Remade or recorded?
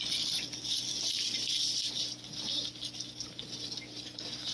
recorded